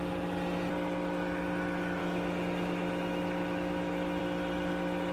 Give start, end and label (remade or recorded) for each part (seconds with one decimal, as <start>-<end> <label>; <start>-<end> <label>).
0.0-2.0 recorded; 2.0-4.2 remade; 4.2-5.1 recorded